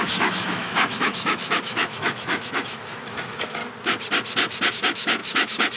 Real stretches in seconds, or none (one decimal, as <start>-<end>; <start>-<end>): 3.6-4.7